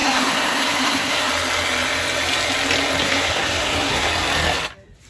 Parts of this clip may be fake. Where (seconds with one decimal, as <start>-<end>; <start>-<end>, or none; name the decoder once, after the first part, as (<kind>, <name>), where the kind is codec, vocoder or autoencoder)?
0.0-1.3 (codec, SNAC); 3.0-4.1